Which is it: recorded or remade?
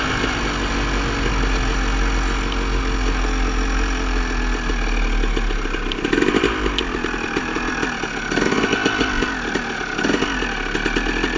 recorded